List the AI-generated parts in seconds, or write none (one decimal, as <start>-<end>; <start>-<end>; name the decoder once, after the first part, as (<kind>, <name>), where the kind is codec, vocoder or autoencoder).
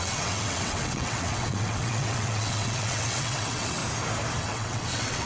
0.0-3.8 (vocoder, WaveNeXt); 4.4-5.3